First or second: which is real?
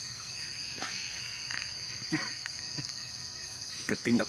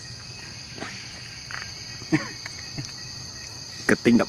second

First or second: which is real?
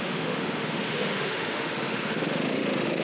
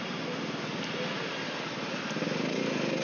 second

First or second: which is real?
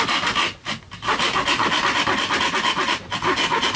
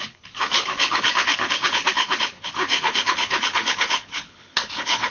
first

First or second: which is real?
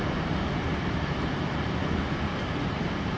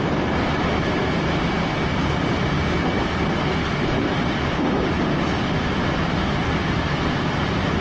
second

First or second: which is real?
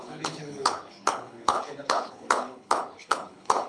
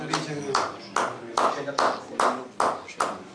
second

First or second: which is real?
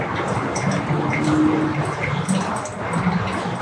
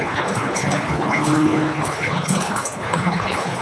first